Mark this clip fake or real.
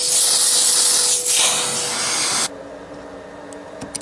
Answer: real